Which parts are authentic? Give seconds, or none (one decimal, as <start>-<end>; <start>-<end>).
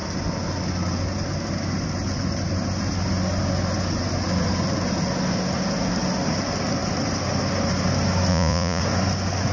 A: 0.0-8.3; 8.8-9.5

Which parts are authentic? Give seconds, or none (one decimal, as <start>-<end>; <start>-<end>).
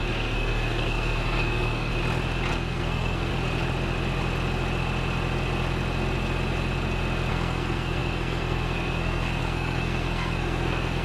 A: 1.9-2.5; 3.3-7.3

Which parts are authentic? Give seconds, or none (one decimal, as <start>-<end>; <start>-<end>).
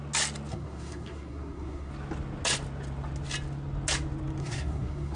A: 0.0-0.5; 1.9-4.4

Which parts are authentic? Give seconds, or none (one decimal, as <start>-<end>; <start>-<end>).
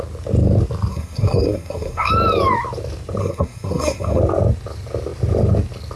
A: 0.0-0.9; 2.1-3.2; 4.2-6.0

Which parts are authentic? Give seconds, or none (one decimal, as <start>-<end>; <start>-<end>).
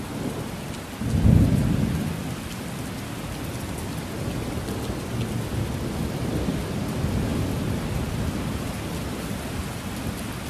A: 0.0-10.5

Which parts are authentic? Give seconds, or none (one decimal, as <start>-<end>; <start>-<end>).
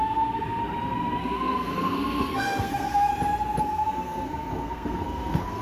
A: 0.6-1.2; 3.1-3.6